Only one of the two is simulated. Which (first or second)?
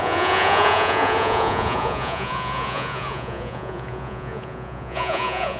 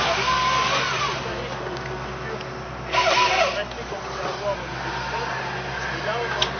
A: first